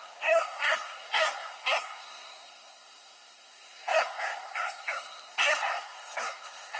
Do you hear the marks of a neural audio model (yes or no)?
yes